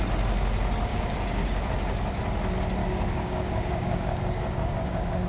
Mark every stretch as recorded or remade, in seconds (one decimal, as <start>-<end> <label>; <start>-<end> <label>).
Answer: 0.0-0.9 recorded; 0.9-1.7 remade; 1.7-2.8 recorded; 2.8-5.3 remade